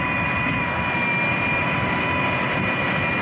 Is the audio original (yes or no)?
yes